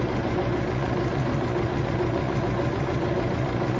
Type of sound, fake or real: fake